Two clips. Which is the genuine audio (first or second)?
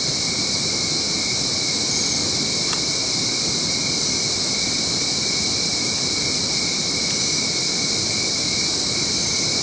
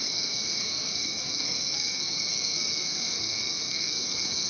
first